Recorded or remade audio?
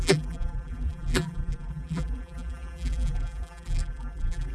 remade